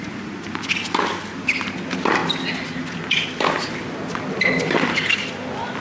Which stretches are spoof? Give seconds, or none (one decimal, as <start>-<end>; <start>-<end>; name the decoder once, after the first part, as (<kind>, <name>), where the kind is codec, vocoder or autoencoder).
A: none